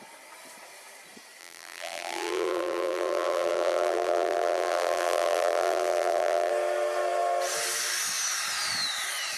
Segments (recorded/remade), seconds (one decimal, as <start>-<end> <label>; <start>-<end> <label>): 0.0-1.4 recorded; 1.4-6.5 remade; 6.5-9.4 recorded